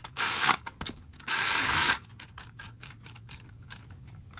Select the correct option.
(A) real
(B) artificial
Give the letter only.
B